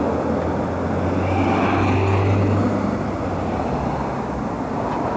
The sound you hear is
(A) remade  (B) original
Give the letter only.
B